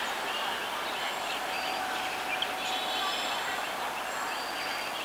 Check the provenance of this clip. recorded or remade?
recorded